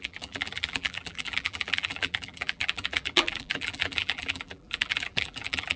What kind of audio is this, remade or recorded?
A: remade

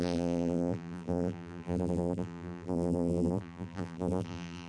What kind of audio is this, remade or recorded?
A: remade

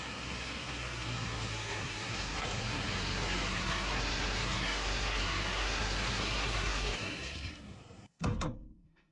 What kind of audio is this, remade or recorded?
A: remade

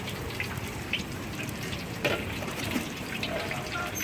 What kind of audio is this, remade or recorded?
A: remade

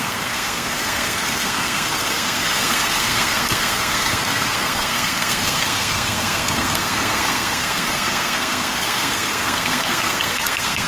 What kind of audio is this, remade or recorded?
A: remade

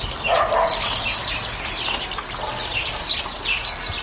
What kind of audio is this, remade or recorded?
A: recorded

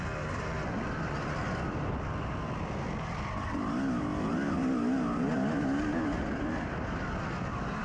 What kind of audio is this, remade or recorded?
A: recorded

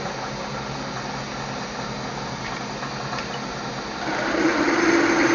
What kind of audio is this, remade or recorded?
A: recorded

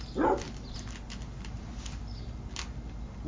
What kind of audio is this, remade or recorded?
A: recorded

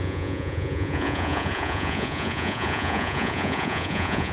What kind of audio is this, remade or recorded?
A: remade